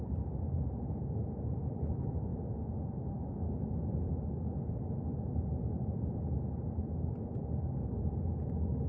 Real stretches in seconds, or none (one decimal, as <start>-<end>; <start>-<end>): 0.0-8.9